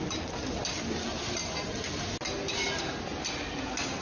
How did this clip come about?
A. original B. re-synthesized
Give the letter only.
A